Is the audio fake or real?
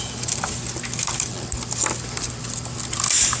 real